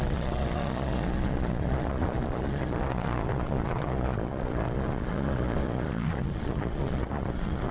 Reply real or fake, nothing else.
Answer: fake